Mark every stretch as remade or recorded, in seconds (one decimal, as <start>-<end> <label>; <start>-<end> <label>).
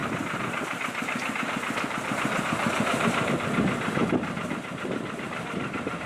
0.0-3.3 remade; 3.3-4.0 recorded; 4.0-6.1 remade